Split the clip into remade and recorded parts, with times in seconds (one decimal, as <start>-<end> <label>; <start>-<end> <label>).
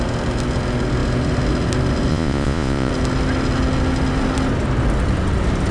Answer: 0.0-2.1 recorded; 2.1-2.9 remade; 2.9-5.7 recorded